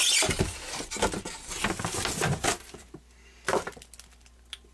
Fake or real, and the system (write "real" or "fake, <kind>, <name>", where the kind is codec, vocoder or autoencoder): real